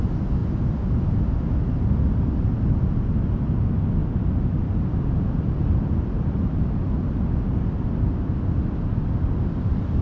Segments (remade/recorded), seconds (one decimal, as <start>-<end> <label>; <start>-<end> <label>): 0.0-10.0 recorded